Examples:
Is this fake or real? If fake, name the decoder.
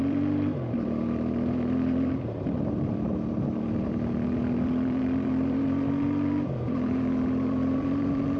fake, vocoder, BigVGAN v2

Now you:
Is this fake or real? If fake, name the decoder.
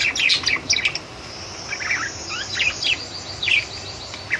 real